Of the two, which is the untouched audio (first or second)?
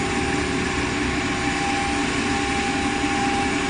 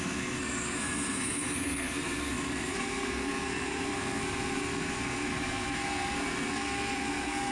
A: first